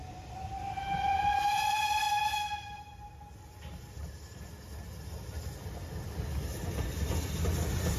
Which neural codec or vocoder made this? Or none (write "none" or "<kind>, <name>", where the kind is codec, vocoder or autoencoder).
none